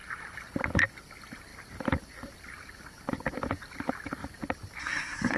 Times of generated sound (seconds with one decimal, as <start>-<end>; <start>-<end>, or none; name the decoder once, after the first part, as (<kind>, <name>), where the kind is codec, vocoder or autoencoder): 4.8-5.4 (codec, SNAC)